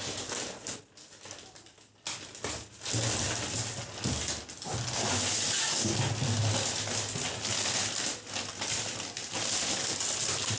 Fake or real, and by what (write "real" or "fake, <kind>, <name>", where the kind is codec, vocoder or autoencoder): real